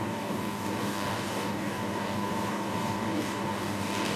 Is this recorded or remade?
remade